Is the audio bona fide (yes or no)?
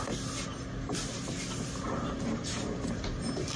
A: yes